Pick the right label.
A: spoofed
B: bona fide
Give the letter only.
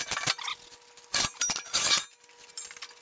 B